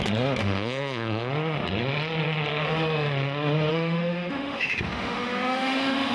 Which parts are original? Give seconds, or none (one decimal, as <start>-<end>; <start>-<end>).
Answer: 0.0-0.4; 1.3-3.7